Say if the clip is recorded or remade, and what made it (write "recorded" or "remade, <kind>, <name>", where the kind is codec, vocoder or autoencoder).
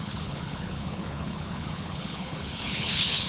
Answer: remade, codec, HILCodec